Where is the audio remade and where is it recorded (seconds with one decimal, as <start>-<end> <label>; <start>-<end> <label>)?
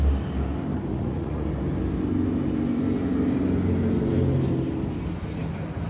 0.0-0.9 recorded; 0.9-1.5 remade; 1.5-5.9 recorded